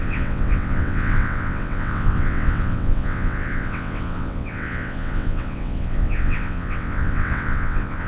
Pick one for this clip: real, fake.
fake